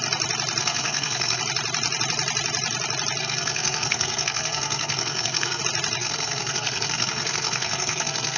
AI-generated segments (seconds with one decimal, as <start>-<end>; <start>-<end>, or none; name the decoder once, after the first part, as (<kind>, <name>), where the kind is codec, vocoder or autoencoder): 0.6-1.4 (codec, SNAC); 3.2-5.6; 6.0-8.4